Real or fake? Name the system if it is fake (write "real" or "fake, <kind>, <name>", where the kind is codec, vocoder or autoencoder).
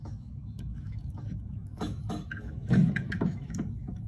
fake, autoencoder, DAC-VAE